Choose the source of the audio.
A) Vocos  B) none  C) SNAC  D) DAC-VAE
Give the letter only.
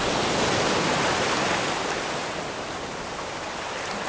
B